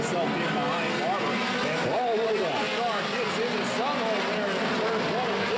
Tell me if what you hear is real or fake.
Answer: real